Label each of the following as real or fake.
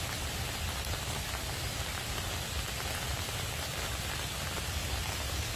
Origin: real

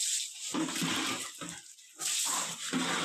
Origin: real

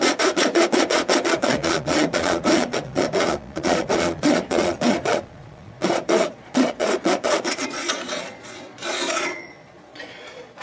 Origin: fake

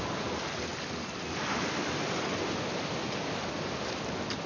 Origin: real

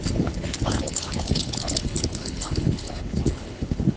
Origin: fake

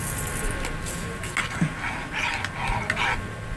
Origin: real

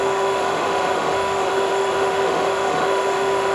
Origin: fake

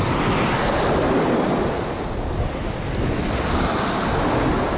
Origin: real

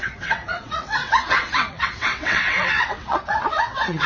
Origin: fake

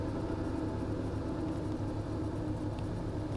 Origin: real